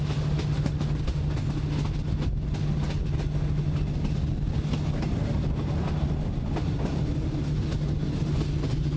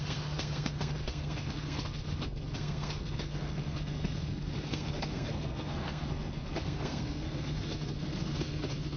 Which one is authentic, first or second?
first